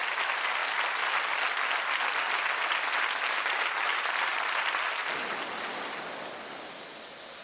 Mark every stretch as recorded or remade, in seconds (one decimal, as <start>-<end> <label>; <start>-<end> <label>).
0.0-7.4 recorded